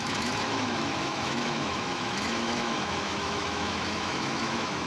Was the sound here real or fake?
fake